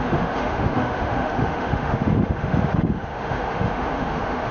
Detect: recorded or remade remade